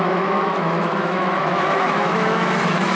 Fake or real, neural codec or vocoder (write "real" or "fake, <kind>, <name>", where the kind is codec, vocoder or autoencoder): fake, autoencoder, DAC-VAE